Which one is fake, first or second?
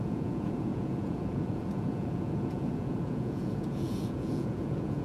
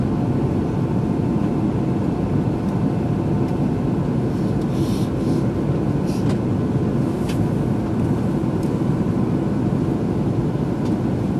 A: first